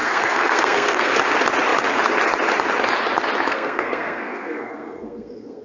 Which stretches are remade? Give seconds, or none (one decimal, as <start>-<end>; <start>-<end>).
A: 0.0-1.2; 3.5-5.6